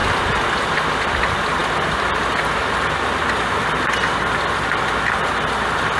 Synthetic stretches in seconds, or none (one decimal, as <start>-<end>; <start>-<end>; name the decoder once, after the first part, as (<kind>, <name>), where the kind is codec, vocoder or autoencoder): none